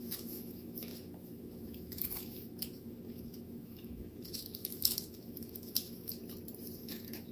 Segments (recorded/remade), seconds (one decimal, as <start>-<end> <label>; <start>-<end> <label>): 0.0-6.2 remade; 6.2-6.8 recorded; 6.8-7.3 remade